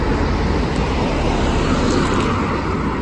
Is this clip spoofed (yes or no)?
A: no